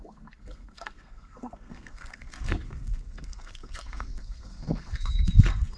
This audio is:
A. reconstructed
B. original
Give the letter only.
A